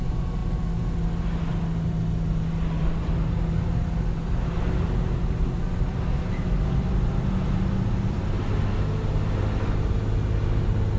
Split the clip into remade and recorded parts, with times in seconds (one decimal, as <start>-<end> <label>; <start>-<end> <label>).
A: 0.0-5.2 recorded; 5.2-8.2 remade; 8.2-11.0 recorded